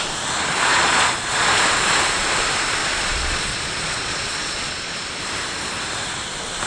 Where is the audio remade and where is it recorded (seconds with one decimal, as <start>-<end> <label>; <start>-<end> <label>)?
0.0-0.7 recorded; 0.7-1.6 remade; 1.6-2.8 recorded; 2.8-5.1 remade; 5.1-6.7 recorded